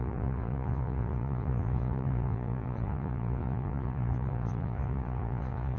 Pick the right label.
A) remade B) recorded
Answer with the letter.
A